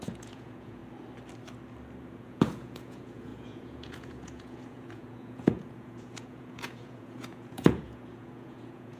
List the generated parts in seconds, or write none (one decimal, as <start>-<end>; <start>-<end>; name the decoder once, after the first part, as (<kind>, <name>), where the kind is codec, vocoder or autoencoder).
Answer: 0.0-0.8 (vocoder, Vocos); 2.0-9.0